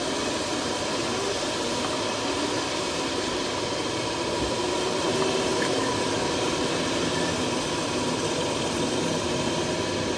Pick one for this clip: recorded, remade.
remade